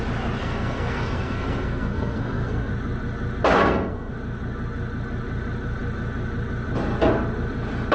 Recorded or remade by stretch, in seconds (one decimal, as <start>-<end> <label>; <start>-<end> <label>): 0.0-0.4 recorded; 0.4-2.7 remade; 2.7-3.6 recorded; 3.6-4.1 remade; 4.1-7.9 recorded

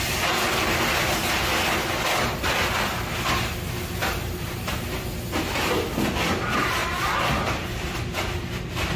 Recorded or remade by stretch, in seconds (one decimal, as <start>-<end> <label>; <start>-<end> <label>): 0.0-9.0 recorded

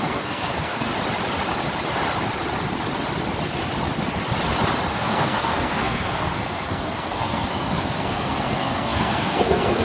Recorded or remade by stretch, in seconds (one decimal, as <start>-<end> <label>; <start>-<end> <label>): 0.0-0.9 remade; 0.9-4.9 recorded; 4.9-9.8 remade

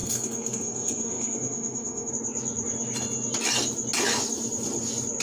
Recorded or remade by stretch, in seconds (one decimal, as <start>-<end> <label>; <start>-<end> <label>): 0.0-2.1 remade; 2.1-5.2 recorded